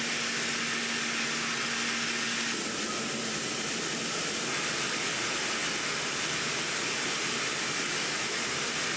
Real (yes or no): yes